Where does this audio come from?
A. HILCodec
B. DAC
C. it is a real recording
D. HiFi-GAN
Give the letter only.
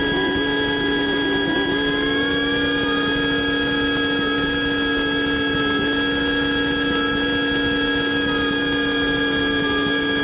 C